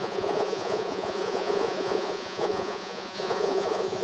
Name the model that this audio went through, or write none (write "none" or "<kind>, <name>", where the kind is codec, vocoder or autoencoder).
vocoder, Vocos